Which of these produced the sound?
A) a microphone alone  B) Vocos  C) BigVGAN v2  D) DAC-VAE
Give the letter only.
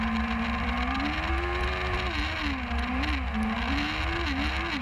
A